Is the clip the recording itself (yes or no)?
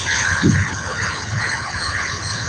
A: no